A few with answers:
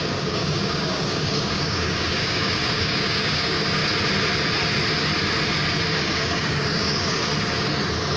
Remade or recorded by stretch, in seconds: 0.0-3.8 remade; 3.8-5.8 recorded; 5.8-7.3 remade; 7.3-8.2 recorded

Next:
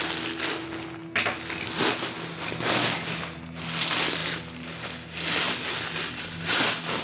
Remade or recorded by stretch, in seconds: 0.0-7.0 recorded